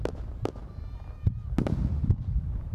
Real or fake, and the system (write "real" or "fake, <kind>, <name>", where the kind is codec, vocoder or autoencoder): real